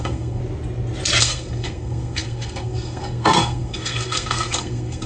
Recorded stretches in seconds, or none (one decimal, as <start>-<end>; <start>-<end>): 0.4-1.2